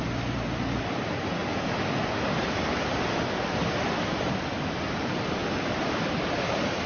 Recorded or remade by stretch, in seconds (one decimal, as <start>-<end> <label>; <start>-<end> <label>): 0.0-1.4 remade; 1.4-2.6 recorded; 2.6-5.4 remade; 5.4-6.0 recorded; 6.0-6.9 remade